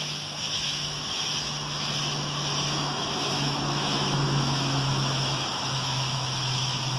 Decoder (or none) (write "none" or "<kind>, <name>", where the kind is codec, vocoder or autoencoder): autoencoder, DAC-VAE